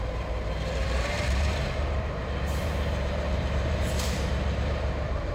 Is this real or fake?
fake